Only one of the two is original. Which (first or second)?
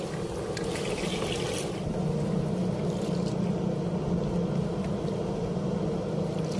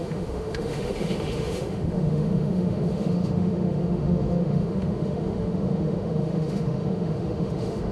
first